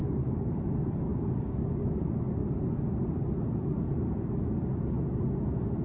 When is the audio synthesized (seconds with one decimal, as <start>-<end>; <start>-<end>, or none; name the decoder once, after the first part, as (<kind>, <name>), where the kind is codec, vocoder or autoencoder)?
0.0-0.6 (codec, DAC); 1.1-1.9